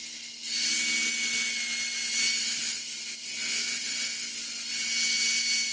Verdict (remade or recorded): recorded